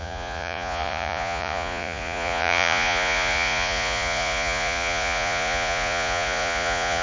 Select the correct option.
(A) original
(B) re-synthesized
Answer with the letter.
B